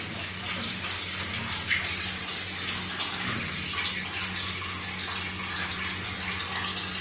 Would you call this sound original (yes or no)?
yes